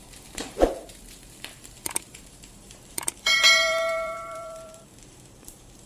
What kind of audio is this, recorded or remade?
remade